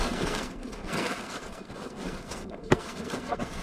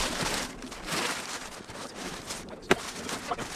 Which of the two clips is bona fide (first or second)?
second